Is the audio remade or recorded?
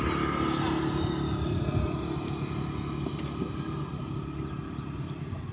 recorded